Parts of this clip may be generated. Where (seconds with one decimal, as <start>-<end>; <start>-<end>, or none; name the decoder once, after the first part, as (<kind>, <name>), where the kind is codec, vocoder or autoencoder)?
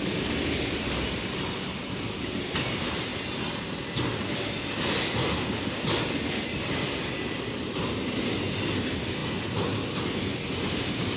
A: none